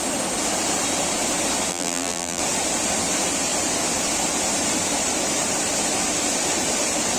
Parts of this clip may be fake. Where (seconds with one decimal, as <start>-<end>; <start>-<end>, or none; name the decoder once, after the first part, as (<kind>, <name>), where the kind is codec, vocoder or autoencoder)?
1.7-2.4 (vocoder, BigVGAN v2)